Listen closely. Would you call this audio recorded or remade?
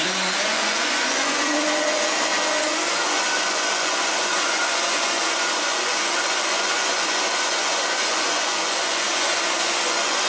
remade